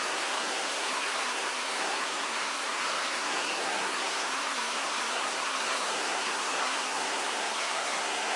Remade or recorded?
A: remade